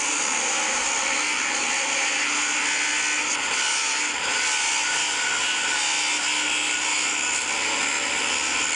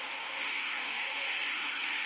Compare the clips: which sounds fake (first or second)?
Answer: second